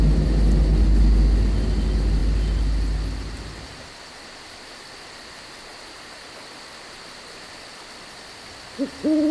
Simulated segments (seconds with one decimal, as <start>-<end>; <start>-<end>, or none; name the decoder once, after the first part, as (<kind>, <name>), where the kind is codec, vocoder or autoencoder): none